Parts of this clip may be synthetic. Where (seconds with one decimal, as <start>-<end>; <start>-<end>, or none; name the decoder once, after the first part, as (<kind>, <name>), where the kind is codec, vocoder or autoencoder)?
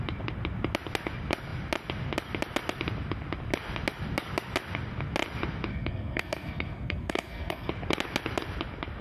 5.7-7.7 (codec, SNAC)